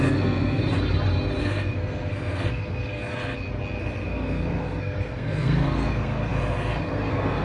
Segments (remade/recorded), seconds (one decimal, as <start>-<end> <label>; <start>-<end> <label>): 0.0-0.6 remade; 0.6-1.4 recorded; 1.4-3.0 remade; 3.0-3.8 recorded; 3.8-7.4 remade